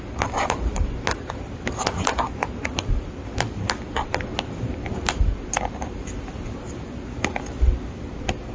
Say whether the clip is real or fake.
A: real